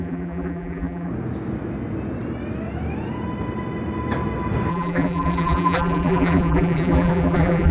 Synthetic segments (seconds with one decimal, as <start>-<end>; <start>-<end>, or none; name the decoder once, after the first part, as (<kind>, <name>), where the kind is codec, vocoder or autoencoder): 0.0-1.1 (vocoder, BigVGAN v2); 4.7-7.7